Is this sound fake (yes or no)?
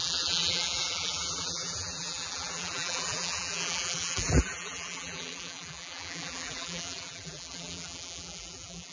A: yes